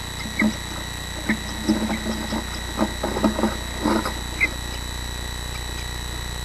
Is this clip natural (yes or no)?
yes